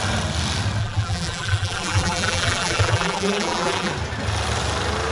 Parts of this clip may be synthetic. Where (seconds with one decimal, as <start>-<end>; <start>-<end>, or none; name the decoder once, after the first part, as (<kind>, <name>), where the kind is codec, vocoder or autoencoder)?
0.8-3.9 (vocoder, BigVGAN v2)